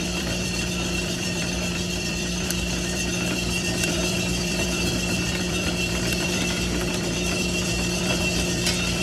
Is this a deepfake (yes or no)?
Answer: yes